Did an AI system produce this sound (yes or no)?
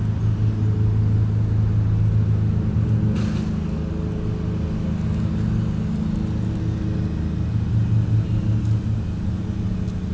no